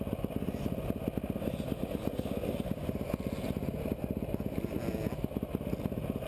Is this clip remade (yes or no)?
no